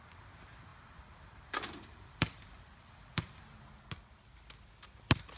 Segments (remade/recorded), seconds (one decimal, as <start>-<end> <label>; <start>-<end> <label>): 0.0-0.7 recorded; 0.7-3.4 remade; 3.4-5.4 recorded